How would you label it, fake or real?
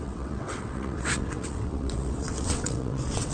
fake